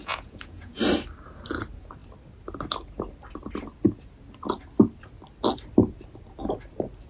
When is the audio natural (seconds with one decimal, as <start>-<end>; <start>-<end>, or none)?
0.8-7.1